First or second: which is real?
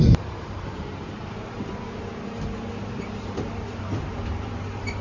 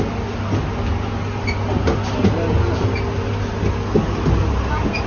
second